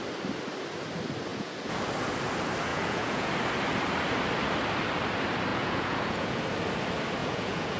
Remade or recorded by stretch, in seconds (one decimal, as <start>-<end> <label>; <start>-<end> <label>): 0.0-1.3 recorded; 1.3-1.8 remade; 1.8-2.7 recorded; 2.7-3.3 remade; 3.3-5.5 recorded; 5.5-6.4 remade; 6.4-7.2 recorded; 7.2-7.8 remade